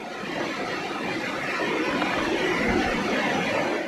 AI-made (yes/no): no